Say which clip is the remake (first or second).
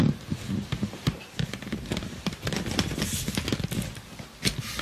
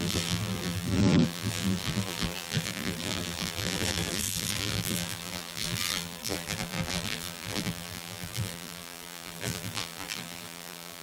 second